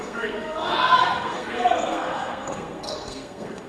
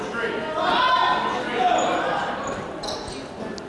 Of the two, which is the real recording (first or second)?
second